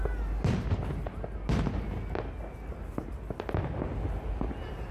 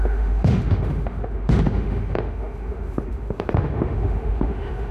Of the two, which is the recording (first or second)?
first